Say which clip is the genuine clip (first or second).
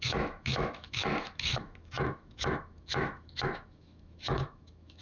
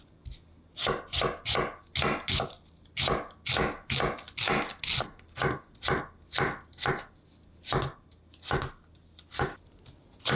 second